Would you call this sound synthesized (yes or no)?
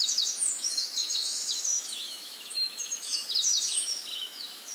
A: yes